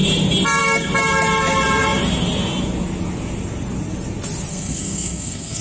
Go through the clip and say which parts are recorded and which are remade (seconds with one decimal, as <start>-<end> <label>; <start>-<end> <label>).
0.0-4.5 recorded; 4.5-5.6 remade